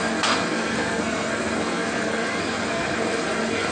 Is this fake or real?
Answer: fake